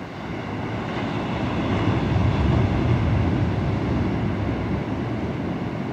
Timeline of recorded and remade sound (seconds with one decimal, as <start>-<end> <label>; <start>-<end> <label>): 0.0-5.9 recorded